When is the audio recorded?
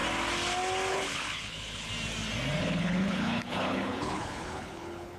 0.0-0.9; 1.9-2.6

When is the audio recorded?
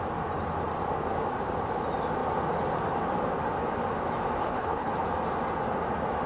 0.0-4.4; 4.9-6.3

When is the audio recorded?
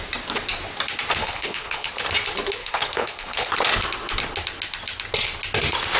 0.0-1.2; 1.9-2.6; 3.5-6.0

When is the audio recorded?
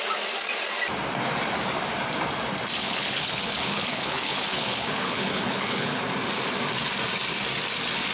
0.0-2.8; 6.0-8.1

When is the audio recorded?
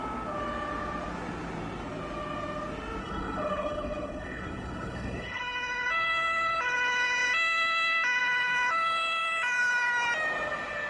0.0-3.0; 5.4-10.9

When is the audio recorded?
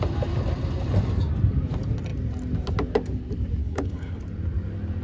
0.0-3.6; 4.2-5.0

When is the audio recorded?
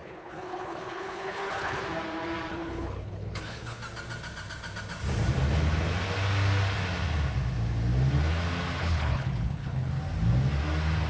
1.8-2.5; 3.8-8.8; 9.9-11.1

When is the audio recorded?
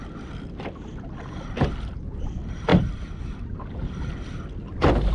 0.0-5.1